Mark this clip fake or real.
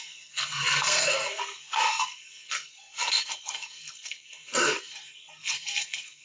fake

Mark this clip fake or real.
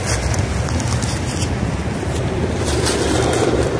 real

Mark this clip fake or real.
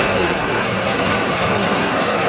fake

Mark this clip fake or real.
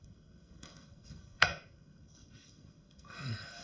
fake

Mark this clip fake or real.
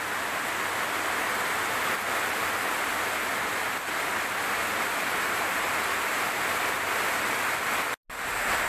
real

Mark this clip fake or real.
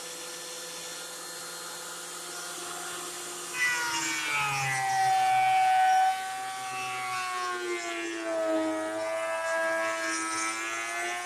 real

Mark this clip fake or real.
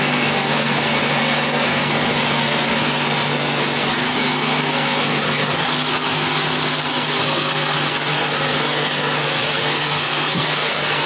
fake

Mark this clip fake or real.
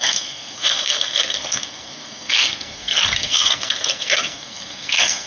fake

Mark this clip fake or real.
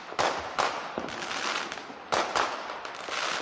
real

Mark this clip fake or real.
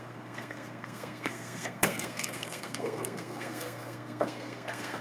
fake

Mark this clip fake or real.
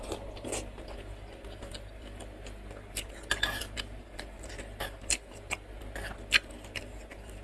real